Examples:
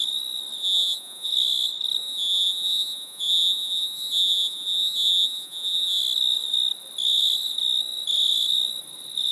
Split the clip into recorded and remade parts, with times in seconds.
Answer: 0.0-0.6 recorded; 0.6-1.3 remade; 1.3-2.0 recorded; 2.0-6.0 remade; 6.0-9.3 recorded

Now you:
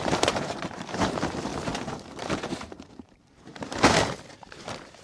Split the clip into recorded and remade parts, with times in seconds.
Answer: 0.0-1.5 remade; 1.5-2.5 recorded; 2.5-3.5 remade; 3.5-4.3 recorded; 4.3-5.0 remade

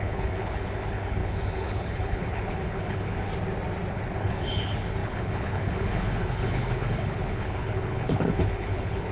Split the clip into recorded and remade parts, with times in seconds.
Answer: 0.0-3.3 remade; 3.3-3.9 recorded; 3.9-9.1 remade

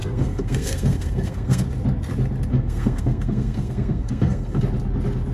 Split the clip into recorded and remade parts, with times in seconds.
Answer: 0.0-1.6 remade; 1.6-2.5 recorded; 2.5-4.6 remade; 4.6-5.3 recorded

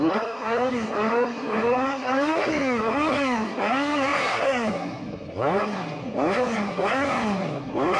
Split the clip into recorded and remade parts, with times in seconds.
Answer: 0.0-8.0 remade

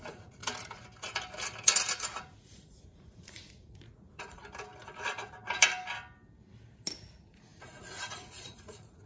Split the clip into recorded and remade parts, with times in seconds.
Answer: 0.0-0.4 remade; 0.4-1.9 recorded; 1.9-4.4 remade; 4.4-7.0 recorded; 7.0-9.1 remade